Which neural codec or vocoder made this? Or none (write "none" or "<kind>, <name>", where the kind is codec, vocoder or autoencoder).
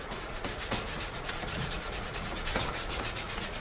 vocoder, Vocos